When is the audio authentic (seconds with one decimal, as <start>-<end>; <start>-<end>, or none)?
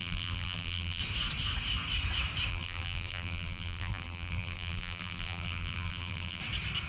1.0-2.5; 6.4-6.9